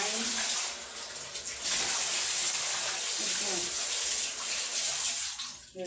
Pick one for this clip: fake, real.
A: real